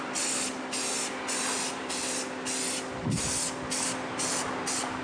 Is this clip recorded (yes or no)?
yes